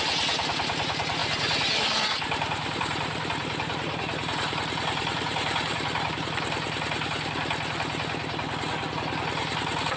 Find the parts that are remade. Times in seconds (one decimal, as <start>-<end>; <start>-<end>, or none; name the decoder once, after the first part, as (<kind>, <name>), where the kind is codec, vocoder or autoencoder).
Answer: 1.2-6.1 (vocoder, BigVGAN v2)